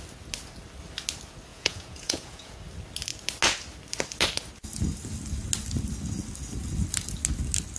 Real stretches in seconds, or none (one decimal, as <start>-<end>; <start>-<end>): 0.0-1.5; 2.6-7.8